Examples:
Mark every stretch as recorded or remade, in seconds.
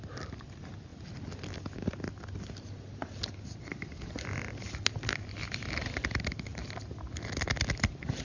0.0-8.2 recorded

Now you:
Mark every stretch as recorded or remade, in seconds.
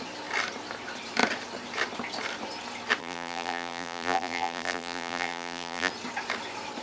0.0-3.0 recorded; 3.0-5.9 remade; 5.9-6.8 recorded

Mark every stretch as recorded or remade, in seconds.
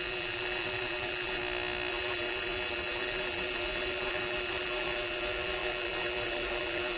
0.0-1.4 remade; 1.4-1.9 recorded; 1.9-7.0 remade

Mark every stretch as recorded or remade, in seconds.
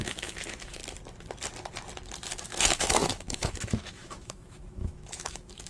0.0-0.8 remade; 0.8-2.4 recorded; 2.4-5.7 remade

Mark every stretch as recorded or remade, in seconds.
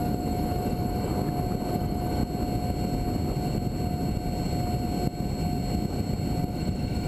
0.0-1.1 remade; 1.1-1.7 recorded; 1.7-2.2 remade; 2.2-6.5 recorded; 6.5-7.1 remade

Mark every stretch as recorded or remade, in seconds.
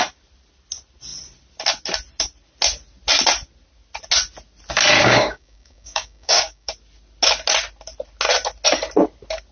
0.0-5.0 recorded; 5.0-6.7 remade; 6.7-9.5 recorded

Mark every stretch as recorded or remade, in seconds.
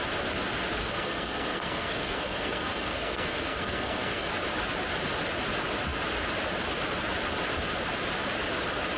0.0-0.8 recorded; 0.8-4.3 remade; 4.3-9.0 recorded